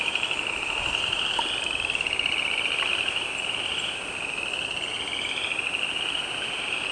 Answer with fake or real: real